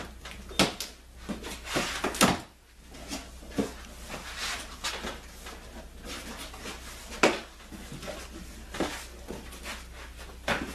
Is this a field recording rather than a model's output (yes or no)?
yes